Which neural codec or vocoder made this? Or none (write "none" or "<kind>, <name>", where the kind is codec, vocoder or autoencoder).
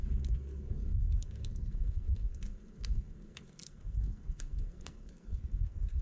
codec, SNAC